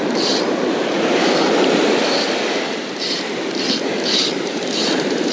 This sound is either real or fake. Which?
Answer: fake